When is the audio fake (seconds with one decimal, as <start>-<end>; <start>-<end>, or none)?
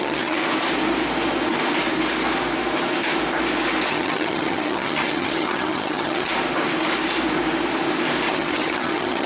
0.0-0.4; 3.9-6.3; 8.3-9.3